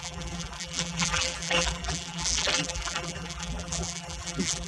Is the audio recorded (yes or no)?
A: no